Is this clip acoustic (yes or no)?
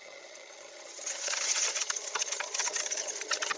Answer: no